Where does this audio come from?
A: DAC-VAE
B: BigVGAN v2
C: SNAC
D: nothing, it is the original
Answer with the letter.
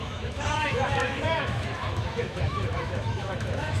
A